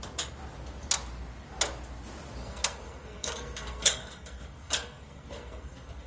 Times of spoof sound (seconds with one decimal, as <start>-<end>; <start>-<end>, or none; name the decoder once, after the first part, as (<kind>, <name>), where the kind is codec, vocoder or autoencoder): 2.4-6.1 (codec, SNAC)